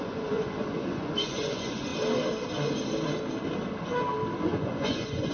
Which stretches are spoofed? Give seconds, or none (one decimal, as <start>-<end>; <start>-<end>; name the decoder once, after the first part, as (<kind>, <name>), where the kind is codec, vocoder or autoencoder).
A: 0.0-1.9 (vocoder, Vocos); 4.4-5.3